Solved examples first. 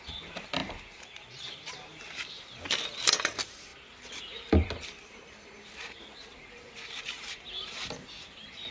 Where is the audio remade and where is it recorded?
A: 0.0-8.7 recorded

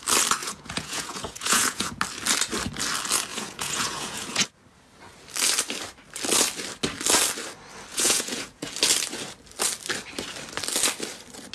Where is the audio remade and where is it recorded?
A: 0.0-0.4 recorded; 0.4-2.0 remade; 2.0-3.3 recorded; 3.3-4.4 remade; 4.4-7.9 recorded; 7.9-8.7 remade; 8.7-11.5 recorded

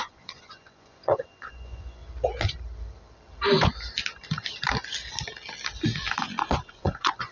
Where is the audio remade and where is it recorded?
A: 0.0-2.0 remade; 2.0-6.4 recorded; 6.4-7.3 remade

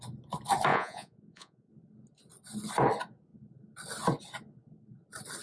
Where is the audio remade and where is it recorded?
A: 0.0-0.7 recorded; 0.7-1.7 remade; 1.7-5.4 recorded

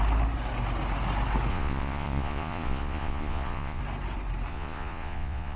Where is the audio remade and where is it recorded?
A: 0.0-1.5 recorded; 1.5-3.8 remade; 3.8-4.5 recorded; 4.5-5.6 remade

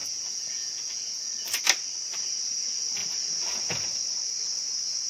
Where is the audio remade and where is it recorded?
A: 0.0-1.6 remade; 1.6-5.1 recorded

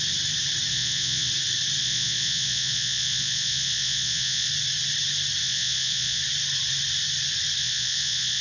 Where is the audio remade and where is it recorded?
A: 0.0-0.7 recorded; 0.7-1.3 remade; 1.3-1.8 recorded; 1.8-4.5 remade; 4.5-5.4 recorded; 5.4-6.2 remade; 6.2-7.6 recorded; 7.6-8.4 remade